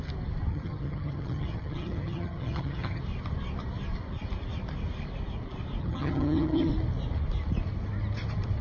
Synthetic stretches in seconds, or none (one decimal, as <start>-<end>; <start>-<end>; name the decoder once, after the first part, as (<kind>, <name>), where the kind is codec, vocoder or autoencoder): 0.5-3.0 (vocoder, HiFi-GAN); 5.8-6.7